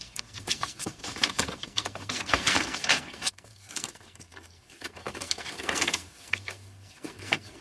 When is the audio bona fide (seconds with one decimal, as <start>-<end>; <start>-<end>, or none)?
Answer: none